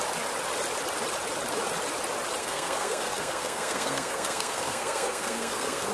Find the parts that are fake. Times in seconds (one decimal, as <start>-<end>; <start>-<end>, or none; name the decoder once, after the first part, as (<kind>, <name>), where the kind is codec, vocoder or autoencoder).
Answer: 2.4-5.9 (codec, SNAC)